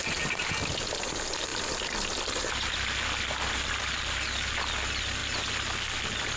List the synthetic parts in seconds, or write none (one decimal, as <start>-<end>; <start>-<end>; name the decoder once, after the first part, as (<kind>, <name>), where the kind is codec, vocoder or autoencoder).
none